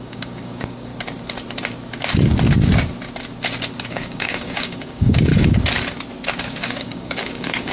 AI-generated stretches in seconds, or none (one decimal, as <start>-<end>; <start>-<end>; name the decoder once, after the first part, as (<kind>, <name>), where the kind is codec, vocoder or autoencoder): 0.0-0.9 (codec, DAC); 3.9-5.3; 6.4-7.7